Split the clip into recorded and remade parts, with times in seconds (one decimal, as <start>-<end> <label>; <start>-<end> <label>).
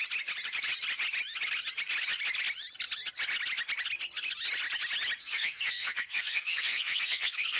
0.0-5.2 recorded; 5.2-7.6 remade